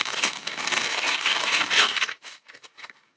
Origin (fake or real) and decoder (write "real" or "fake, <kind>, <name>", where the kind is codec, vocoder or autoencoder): fake, codec, DAC